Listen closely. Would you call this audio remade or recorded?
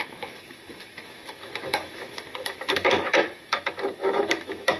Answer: remade